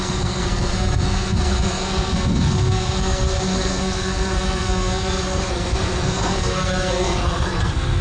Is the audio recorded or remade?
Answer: remade